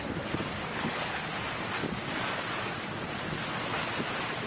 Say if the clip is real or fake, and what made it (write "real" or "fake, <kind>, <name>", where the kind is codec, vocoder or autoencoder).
real